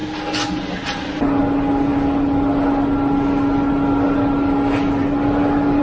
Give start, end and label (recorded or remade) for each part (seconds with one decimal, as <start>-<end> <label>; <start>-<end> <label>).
0.0-5.8 recorded